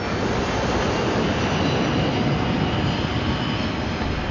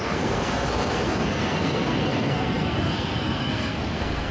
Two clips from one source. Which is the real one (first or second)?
first